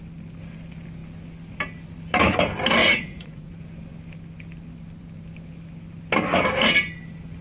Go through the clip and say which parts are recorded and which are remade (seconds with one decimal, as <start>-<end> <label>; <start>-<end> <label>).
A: 0.0-2.8 recorded; 2.8-3.5 remade; 3.5-7.4 recorded